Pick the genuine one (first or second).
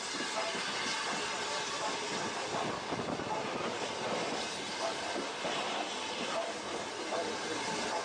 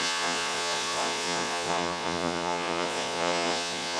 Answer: first